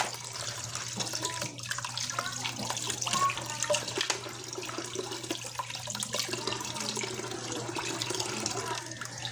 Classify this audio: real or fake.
real